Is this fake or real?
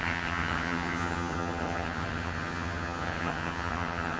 fake